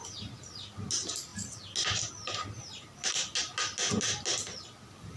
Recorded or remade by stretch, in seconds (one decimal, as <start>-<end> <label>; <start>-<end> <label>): 0.0-5.2 recorded